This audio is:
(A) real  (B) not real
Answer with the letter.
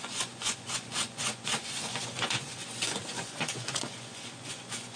B